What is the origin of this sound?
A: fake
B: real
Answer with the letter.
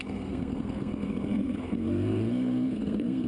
A